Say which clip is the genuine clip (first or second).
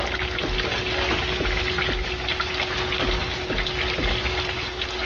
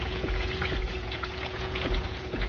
first